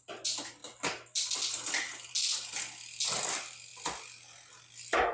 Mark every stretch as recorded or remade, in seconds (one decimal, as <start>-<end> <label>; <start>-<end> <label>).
0.0-5.1 recorded